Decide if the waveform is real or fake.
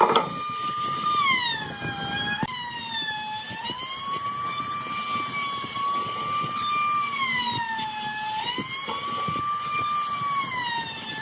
real